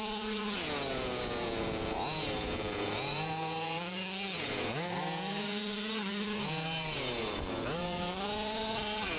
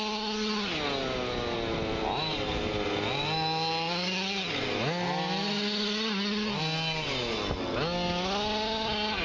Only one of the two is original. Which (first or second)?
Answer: second